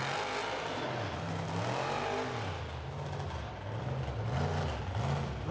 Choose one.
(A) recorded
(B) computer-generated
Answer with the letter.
A